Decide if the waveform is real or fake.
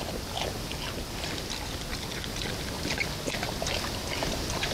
real